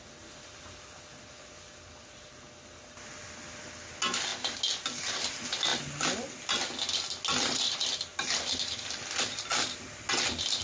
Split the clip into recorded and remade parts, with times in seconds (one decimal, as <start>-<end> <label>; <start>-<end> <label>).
0.0-8.1 recorded; 8.1-9.4 remade; 9.4-10.6 recorded